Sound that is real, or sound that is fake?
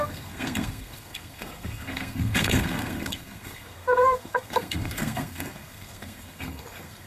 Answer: fake